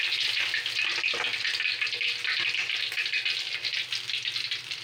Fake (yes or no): no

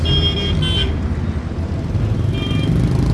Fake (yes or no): no